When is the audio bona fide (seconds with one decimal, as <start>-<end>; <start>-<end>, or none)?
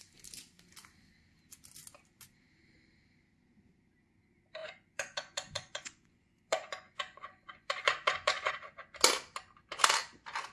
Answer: 0.0-4.6; 8.5-10.5